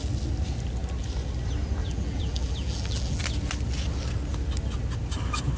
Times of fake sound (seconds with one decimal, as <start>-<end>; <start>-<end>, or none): 1.8-3.2